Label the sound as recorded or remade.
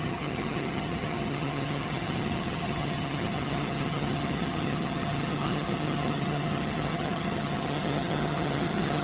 remade